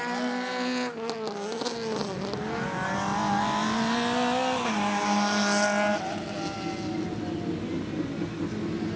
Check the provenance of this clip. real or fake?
real